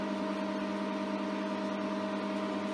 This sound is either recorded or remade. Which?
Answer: recorded